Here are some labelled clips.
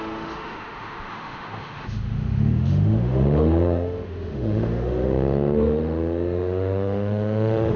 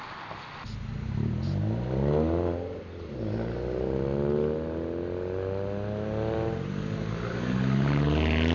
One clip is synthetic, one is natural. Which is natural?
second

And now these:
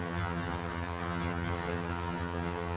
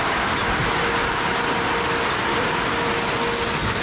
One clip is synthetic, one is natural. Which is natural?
second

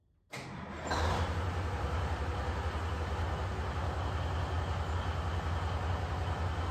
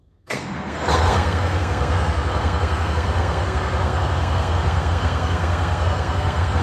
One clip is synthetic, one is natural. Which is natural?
first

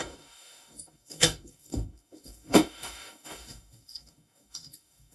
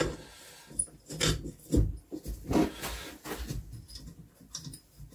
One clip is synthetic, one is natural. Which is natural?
second